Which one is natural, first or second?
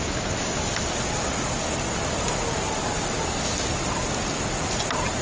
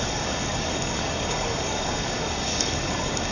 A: first